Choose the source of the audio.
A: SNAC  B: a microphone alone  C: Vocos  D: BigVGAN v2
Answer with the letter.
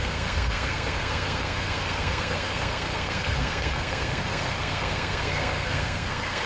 A